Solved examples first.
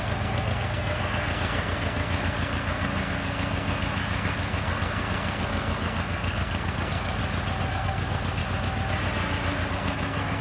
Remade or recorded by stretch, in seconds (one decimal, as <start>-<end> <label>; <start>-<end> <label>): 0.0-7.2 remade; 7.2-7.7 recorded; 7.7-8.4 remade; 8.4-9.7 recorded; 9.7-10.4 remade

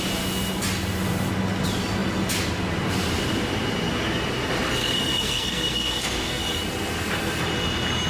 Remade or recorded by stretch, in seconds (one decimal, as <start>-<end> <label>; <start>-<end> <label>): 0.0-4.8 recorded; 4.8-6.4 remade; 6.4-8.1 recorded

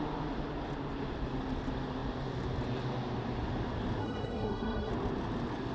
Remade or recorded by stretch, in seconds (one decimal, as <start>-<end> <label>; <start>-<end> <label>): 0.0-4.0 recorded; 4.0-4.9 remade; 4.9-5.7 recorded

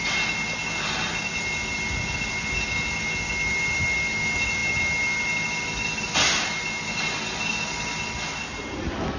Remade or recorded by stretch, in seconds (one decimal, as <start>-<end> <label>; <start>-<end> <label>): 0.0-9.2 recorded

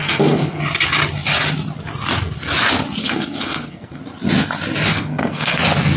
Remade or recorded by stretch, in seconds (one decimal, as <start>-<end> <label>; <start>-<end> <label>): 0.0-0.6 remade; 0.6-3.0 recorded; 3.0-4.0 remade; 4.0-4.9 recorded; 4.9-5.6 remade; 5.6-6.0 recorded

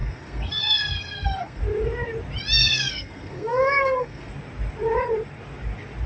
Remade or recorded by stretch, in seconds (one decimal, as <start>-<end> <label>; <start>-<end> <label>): 0.0-1.6 remade; 1.6-2.6 recorded; 2.6-4.3 remade; 4.3-6.1 recorded